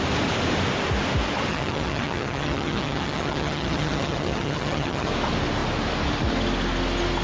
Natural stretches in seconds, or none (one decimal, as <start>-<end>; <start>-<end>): 0.0-1.5; 5.1-7.2